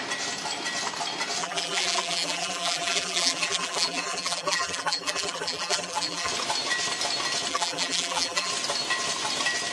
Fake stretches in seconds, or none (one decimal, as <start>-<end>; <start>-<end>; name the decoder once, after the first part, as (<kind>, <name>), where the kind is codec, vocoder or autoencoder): 1.4-6.3 (vocoder, BigVGAN v2); 7.5-8.5

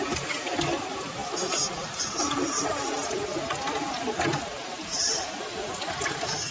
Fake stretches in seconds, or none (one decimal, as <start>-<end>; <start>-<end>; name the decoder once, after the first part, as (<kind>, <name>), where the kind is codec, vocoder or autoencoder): none

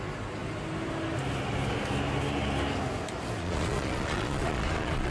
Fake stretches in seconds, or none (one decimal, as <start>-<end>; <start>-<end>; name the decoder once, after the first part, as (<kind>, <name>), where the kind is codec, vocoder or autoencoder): 3.4-5.1 (vocoder, Vocos)

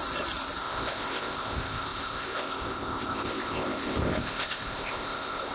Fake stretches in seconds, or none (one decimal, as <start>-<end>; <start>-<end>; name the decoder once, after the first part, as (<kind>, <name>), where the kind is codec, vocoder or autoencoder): 0.6-5.5 (codec, ZipCodec)

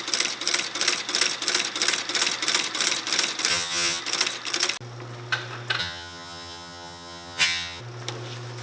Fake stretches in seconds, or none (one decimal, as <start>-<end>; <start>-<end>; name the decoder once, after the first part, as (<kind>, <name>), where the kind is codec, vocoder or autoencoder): 3.5-4.0 (vocoder, HiFi-GAN); 5.8-7.8